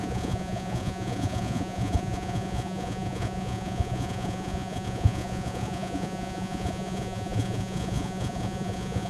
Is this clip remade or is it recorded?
remade